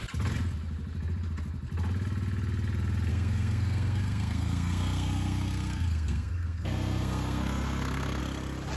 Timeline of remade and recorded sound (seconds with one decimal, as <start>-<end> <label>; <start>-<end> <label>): 0.0-3.1 recorded; 3.1-8.2 remade; 8.2-8.8 recorded